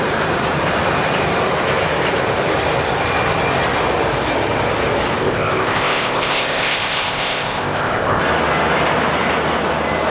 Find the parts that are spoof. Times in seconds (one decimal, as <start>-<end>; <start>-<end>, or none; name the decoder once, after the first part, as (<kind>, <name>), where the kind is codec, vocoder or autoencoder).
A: 5.2-8.2 (codec, ZipCodec)